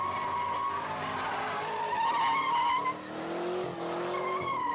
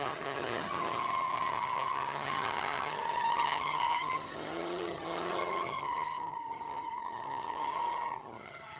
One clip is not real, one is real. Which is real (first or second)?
first